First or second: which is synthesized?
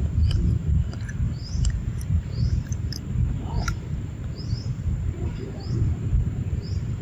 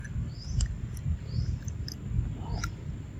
first